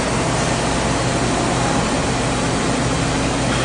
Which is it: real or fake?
real